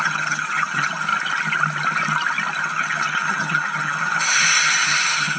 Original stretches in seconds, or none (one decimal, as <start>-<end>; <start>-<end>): 1.1-2.6; 4.1-4.6